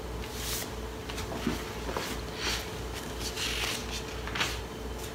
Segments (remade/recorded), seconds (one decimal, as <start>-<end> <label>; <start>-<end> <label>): 0.0-5.1 recorded